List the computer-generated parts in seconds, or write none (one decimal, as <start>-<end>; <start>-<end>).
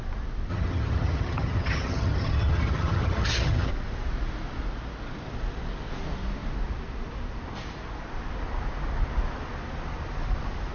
0.5-3.7